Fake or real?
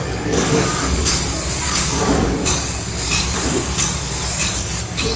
fake